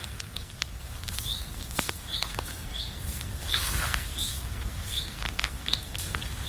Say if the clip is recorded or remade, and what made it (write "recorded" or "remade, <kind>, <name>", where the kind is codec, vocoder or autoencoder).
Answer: remade, codec, SNAC